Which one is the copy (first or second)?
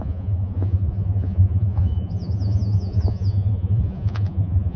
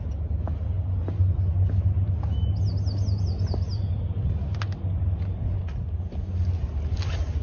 first